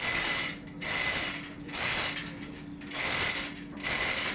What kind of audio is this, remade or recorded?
recorded